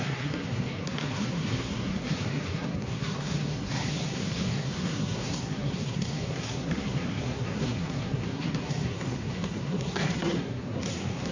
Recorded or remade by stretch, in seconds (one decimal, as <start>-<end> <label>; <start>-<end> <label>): 0.0-11.3 remade